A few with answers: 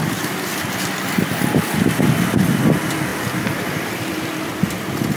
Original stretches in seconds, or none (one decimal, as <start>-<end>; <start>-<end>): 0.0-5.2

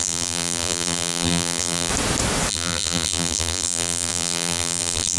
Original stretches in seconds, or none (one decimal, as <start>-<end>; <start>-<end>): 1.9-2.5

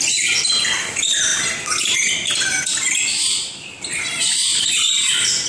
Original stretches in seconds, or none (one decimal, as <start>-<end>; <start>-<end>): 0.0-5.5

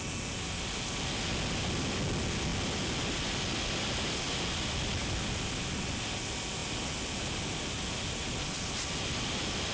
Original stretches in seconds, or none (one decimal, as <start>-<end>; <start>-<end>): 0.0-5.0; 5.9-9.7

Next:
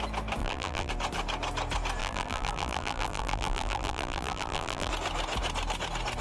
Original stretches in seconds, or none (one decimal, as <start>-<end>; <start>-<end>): 0.0-0.4; 0.9-2.0; 4.9-6.2

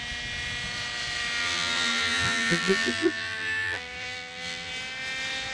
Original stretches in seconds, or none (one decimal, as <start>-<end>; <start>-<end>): 0.0-1.4; 4.7-5.5

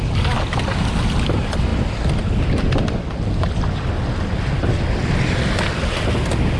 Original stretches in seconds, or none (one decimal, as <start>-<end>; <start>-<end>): 0.0-6.6